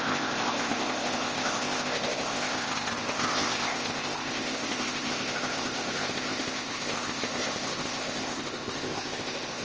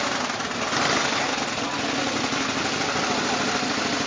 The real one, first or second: second